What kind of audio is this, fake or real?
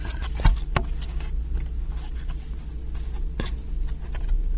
real